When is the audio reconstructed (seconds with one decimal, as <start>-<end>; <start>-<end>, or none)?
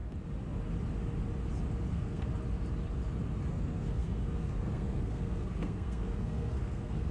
1.9-2.3; 3.5-7.1